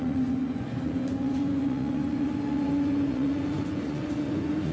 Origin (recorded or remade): remade